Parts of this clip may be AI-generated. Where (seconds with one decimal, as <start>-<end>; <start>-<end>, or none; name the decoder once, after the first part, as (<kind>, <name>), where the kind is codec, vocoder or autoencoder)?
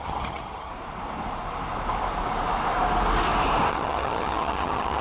0.0-0.7 (vocoder, HiFi-GAN); 3.7-5.0